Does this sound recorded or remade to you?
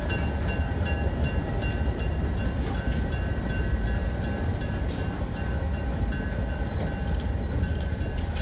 recorded